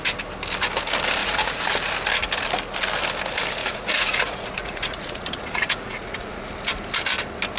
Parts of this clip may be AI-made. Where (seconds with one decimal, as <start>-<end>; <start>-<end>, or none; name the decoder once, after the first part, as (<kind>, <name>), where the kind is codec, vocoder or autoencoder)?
1.2-1.8 (vocoder, Vocos); 3.6-6.5